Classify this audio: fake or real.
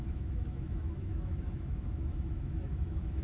fake